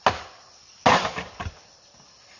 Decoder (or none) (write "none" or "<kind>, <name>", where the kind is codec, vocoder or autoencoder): none